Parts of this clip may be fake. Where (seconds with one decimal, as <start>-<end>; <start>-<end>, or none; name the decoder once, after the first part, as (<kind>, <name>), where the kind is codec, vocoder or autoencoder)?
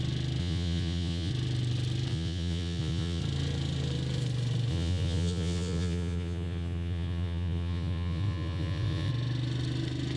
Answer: 0.4-1.3 (vocoder, Vocos); 2.1-3.2; 4.7-9.1